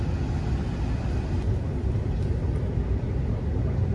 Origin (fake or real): real